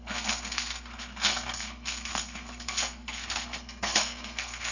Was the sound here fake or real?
fake